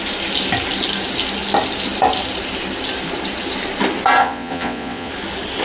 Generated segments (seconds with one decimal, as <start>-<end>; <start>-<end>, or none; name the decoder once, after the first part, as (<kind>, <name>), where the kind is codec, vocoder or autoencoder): 4.2-5.1 (vocoder, Vocos)